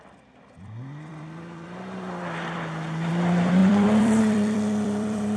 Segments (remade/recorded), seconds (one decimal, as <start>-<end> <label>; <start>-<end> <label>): 0.0-5.4 remade